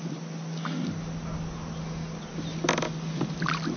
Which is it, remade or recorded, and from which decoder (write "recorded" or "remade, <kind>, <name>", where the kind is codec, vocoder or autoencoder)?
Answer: recorded